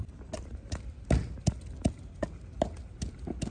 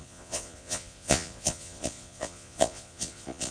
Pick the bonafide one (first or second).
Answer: first